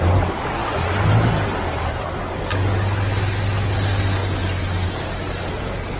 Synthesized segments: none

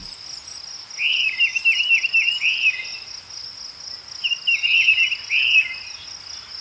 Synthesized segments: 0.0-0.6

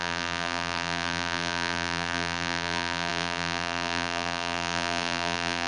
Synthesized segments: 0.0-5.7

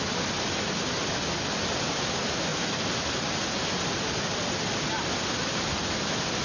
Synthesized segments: none

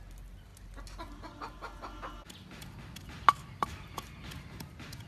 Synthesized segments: none

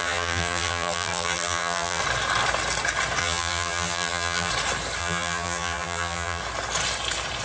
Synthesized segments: 0.0-2.0; 3.2-4.5; 5.0-6.4